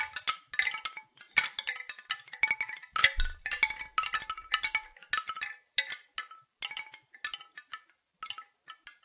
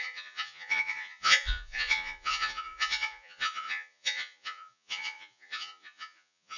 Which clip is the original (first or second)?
first